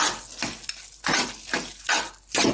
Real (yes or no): yes